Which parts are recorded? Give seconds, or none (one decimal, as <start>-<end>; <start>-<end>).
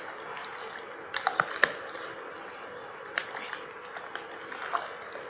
0.0-5.3